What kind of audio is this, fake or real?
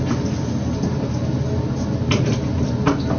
real